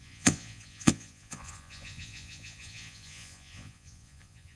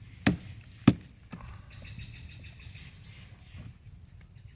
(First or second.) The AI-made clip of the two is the first